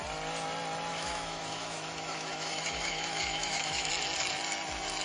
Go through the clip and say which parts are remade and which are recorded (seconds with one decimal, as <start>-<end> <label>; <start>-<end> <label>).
0.0-0.9 recorded; 0.9-3.9 remade; 3.9-5.0 recorded